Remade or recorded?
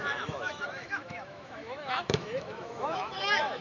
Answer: remade